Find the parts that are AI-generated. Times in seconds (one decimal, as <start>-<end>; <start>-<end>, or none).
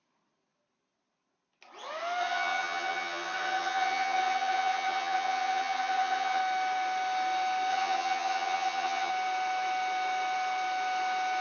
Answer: 2.2-6.4; 7.7-9.1